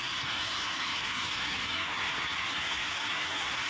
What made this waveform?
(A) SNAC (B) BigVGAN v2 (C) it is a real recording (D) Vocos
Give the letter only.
A